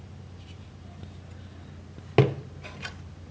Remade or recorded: recorded